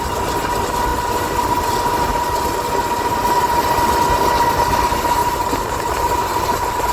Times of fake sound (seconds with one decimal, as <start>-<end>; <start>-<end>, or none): none